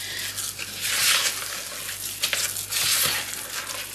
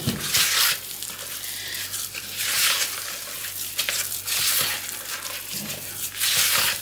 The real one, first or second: first